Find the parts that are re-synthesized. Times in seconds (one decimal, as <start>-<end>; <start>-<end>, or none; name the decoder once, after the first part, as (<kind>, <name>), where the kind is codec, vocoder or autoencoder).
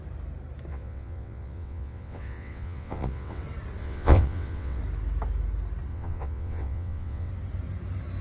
0.7-3.4 (vocoder, WaveNeXt); 3.8-4.8; 5.9-7.3